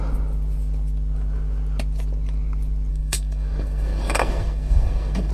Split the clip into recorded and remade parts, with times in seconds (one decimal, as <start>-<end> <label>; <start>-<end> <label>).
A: 0.0-2.9 recorded; 2.9-5.3 remade